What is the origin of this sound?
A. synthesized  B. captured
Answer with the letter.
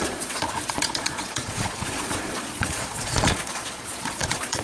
A